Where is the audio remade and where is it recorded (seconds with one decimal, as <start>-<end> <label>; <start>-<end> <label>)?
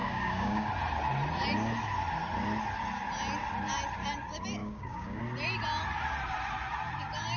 0.0-0.7 remade; 0.7-4.6 recorded; 4.6-5.2 remade; 5.2-7.4 recorded